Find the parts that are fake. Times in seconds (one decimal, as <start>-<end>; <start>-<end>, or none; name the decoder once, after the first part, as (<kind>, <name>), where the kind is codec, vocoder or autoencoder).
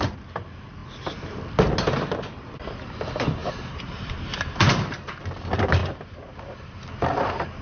3.4-5.2 (vocoder, BigVGAN v2); 5.8-6.9